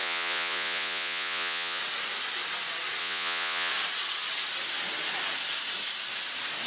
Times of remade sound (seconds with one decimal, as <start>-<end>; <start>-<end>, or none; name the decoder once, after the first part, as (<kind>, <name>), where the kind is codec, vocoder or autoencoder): 0.0-1.8 (vocoder, Vocos); 3.0-3.7